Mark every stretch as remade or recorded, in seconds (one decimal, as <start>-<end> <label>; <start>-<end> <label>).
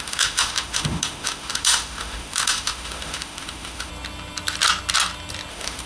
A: 0.0-3.9 remade; 3.9-5.5 recorded; 5.5-5.9 remade